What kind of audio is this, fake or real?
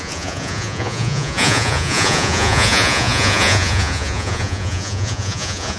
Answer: fake